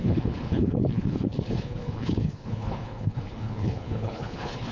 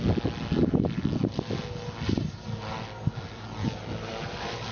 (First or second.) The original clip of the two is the second